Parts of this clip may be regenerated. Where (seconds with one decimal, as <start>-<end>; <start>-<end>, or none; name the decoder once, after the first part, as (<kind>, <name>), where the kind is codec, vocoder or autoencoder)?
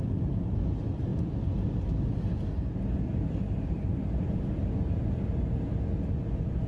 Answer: none